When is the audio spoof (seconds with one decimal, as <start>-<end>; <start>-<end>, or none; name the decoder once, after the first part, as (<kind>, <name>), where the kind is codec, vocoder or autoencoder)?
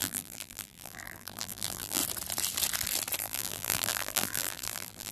0.0-2.0 (vocoder, BigVGAN v2); 3.2-5.1